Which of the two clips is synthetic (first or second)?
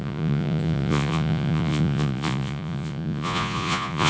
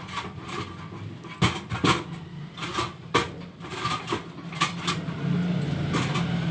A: first